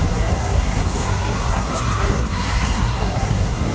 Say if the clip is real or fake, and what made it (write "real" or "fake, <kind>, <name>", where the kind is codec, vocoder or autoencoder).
fake, codec, SNAC